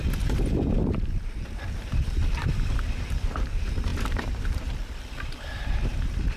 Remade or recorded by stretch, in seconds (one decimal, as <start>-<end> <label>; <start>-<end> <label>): 0.0-6.4 remade